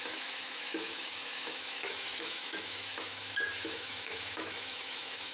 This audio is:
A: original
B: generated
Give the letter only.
B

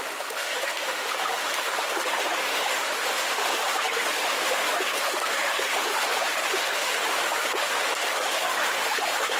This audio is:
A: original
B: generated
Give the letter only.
B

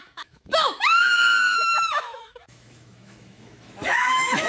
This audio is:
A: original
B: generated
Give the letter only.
B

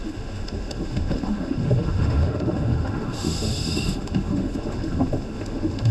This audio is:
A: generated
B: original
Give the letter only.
A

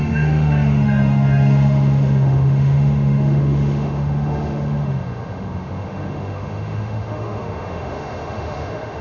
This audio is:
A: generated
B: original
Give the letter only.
A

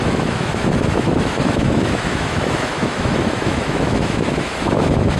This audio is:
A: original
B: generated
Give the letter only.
B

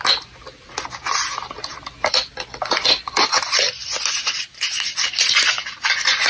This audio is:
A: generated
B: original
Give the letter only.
B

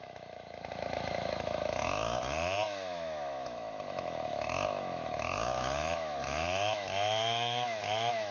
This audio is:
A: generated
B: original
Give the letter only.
A